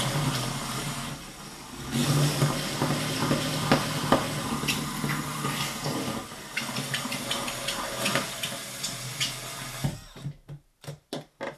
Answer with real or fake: real